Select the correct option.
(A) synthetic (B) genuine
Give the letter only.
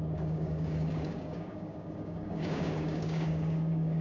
A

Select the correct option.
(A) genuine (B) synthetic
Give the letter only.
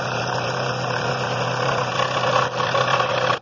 A